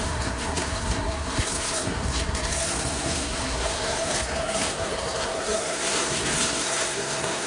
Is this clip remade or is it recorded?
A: remade